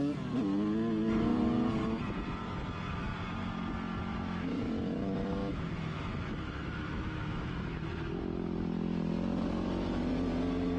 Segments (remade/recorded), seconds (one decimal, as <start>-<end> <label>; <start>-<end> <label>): 0.0-4.1 recorded; 4.1-4.7 remade; 4.7-5.4 recorded; 5.4-8.2 remade; 8.2-10.8 recorded

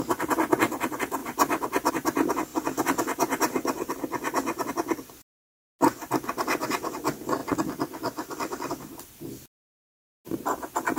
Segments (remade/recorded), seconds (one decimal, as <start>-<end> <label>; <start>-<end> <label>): 0.0-11.0 recorded

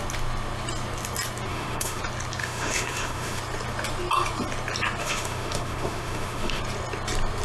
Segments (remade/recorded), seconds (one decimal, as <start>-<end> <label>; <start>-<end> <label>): 0.0-1.5 recorded; 1.5-2.0 remade; 2.0-2.4 recorded; 2.4-3.4 remade; 3.4-5.0 recorded; 5.0-6.6 remade; 6.6-7.4 recorded

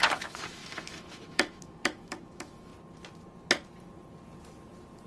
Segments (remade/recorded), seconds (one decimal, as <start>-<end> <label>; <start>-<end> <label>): 0.0-2.7 remade; 2.7-5.1 recorded

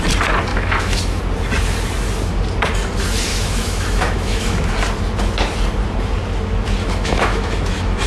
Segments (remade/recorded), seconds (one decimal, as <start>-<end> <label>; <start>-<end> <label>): 0.0-0.5 recorded; 0.5-1.2 remade; 1.2-3.3 recorded; 3.3-4.7 remade; 4.7-6.8 recorded; 6.8-8.1 remade